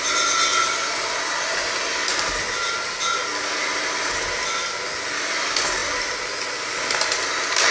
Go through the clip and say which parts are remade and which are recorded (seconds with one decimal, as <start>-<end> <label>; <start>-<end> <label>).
0.0-7.7 recorded